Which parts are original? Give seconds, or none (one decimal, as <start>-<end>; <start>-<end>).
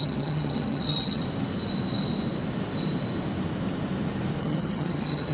1.2-4.4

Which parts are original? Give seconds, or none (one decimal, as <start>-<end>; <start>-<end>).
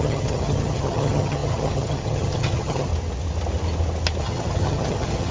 2.9-4.2